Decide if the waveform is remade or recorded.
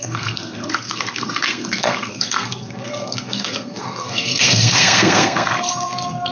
remade